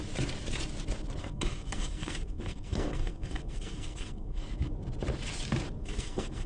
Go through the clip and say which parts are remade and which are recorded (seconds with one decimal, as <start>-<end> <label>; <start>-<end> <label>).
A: 0.0-1.2 recorded; 1.2-4.7 remade; 4.7-5.8 recorded; 5.8-6.5 remade